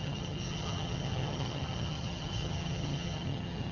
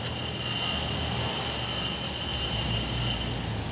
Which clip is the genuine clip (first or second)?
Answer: second